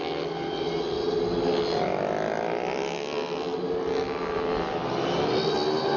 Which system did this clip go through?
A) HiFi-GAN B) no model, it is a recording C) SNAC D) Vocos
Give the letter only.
B